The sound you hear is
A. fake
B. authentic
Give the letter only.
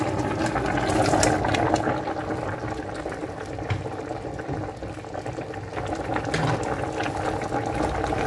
B